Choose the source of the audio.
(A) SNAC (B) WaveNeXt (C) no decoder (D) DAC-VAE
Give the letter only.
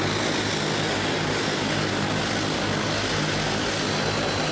C